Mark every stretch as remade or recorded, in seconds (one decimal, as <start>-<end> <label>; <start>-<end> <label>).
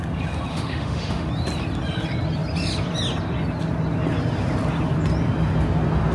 0.0-0.5 recorded; 0.5-1.3 remade; 1.3-6.1 recorded